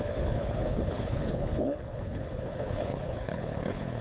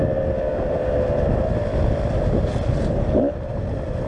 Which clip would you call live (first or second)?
second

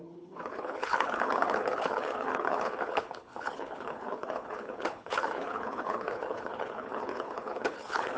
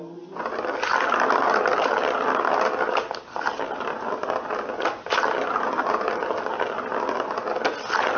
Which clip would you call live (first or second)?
second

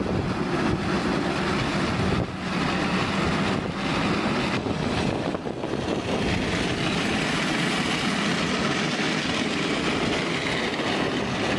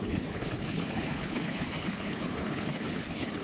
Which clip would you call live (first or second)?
first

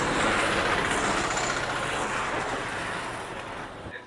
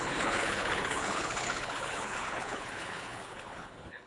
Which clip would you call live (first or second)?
first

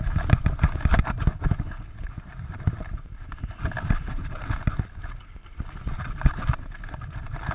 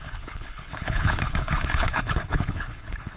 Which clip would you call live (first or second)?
first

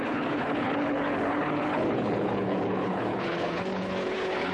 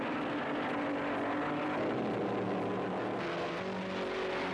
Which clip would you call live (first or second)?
second